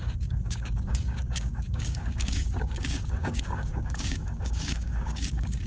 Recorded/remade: remade